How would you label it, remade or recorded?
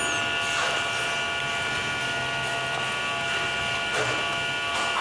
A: recorded